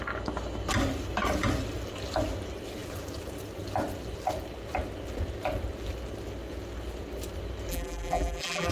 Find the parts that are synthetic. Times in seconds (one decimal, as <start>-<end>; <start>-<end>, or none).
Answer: 7.7-8.7